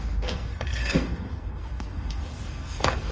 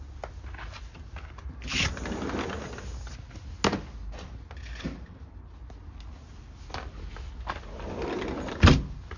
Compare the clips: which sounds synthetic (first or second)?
first